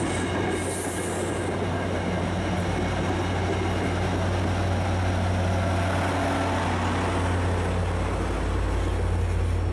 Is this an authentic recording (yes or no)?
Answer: yes